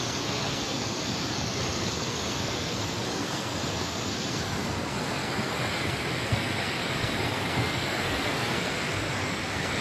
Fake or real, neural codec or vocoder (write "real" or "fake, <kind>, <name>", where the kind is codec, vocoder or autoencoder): fake, codec, SNAC